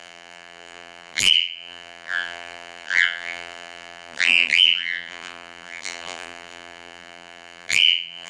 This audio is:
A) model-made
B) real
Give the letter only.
A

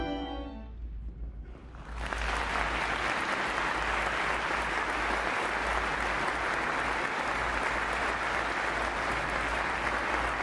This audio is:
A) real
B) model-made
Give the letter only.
A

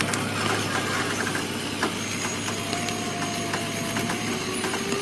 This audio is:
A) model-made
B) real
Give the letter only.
B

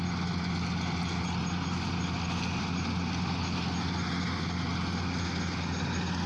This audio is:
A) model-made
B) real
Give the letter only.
B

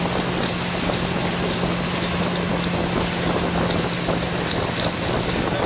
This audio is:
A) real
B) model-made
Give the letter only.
A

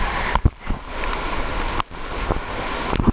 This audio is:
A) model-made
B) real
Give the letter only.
B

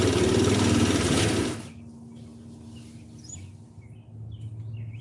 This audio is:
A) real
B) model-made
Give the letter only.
A